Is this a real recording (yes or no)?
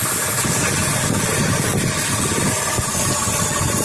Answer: yes